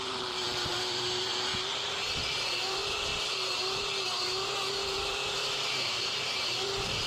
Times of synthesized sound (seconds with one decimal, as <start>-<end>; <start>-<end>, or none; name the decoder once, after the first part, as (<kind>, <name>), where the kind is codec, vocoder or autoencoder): 0.0-7.1 (vocoder, BigVGAN v2)